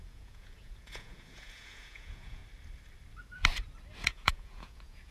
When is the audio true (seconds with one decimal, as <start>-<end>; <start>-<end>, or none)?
2.4-4.0